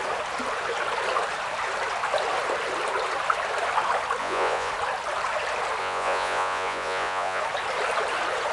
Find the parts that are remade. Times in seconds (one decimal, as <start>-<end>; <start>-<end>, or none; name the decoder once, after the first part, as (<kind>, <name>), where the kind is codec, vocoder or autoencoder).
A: 4.2-4.7 (vocoder, Vocos); 5.8-7.4